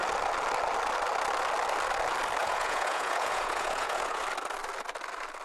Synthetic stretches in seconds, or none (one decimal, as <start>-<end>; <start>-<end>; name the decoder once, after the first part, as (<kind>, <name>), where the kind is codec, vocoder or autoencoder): 2.4-4.2 (vocoder, Vocos)